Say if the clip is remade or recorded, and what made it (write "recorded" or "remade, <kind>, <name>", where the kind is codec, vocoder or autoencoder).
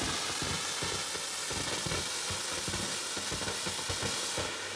recorded